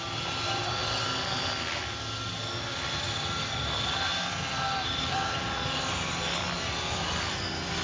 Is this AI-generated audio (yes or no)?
no